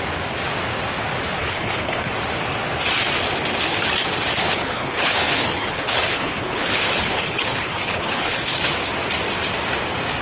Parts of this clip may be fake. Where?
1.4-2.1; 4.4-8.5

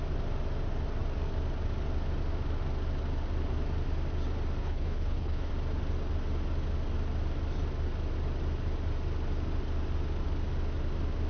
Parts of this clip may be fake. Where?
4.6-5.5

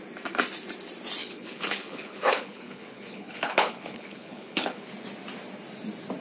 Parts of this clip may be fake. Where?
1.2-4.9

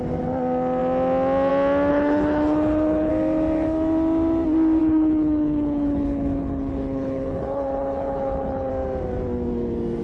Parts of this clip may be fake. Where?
1.9-3.1; 4.8-8.7

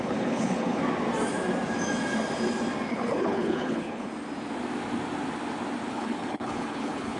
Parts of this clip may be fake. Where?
0.0-0.8; 2.9-4.1; 5.9-7.2

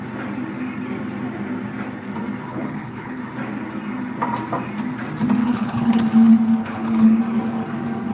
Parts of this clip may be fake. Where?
2.5-3.2; 5.4-6.0; 6.6-7.2